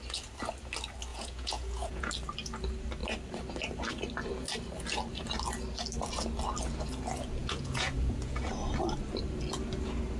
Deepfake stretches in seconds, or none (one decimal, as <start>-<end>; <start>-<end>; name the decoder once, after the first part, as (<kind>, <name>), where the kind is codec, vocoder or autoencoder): 1.1-2.1 (vocoder, Vocos); 7.4-8.5